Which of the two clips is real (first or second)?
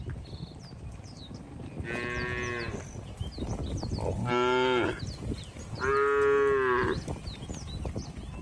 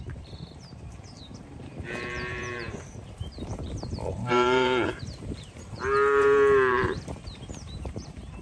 first